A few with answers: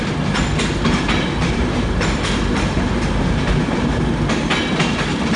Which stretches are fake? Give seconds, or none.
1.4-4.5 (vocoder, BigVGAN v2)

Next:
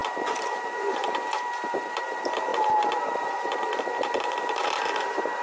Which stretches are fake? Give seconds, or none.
0.0-5.4 (vocoder, BigVGAN v2)

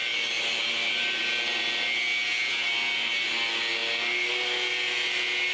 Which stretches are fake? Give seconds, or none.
none

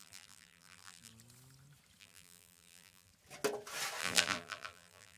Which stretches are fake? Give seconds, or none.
0.0-1.1 (vocoder, BigVGAN v2); 2.0-3.1; 4.0-5.2

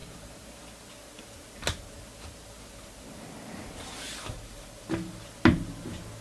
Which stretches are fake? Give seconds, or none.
0.0-0.6 (vocoder, BigVGAN v2)